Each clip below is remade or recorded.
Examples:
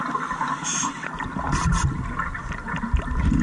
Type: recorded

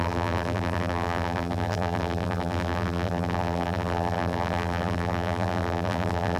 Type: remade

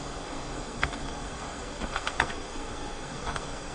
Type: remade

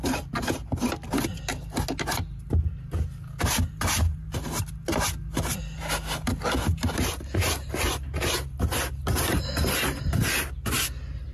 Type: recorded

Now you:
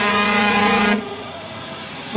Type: remade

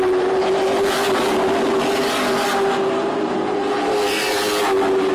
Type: recorded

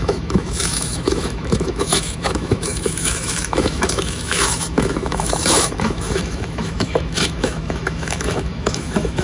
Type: remade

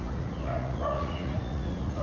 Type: remade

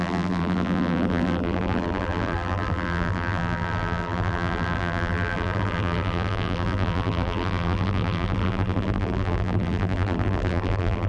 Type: remade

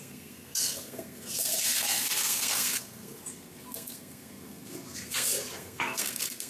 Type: remade